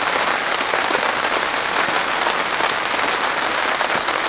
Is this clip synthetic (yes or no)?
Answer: no